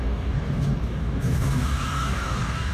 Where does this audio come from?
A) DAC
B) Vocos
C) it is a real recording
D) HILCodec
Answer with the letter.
A